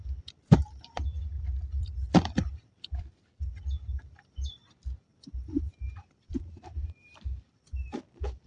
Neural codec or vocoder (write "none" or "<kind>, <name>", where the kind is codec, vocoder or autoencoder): vocoder, BigVGAN v2